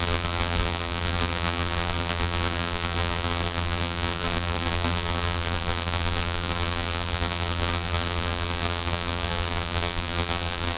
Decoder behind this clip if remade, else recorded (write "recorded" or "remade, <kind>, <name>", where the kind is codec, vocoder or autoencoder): remade, vocoder, BigVGAN v2